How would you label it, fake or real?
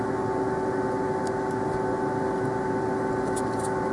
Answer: real